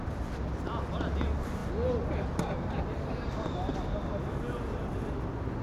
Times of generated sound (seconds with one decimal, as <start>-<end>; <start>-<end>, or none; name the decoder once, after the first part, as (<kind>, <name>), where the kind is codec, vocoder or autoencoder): none